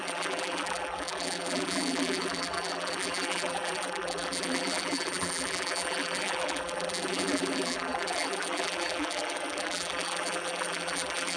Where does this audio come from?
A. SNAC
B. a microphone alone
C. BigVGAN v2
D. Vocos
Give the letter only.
C